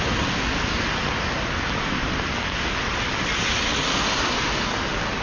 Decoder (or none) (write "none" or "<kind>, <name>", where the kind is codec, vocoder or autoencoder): none